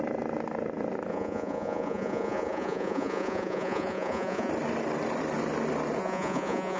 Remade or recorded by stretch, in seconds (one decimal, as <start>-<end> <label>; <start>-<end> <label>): 0.0-1.1 recorded; 1.1-4.5 remade; 4.5-6.0 recorded; 6.0-6.8 remade